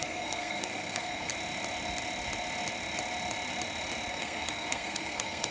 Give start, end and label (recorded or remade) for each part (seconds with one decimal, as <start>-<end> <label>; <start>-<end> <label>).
0.0-1.3 remade; 1.3-4.1 recorded; 4.1-5.5 remade